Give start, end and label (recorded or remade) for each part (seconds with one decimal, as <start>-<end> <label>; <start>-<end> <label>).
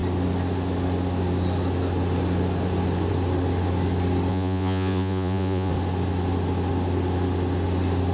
0.0-4.3 recorded; 4.3-5.7 remade; 5.7-8.1 recorded